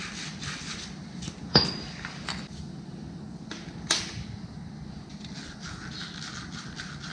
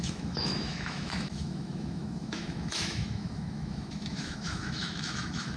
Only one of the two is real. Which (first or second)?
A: first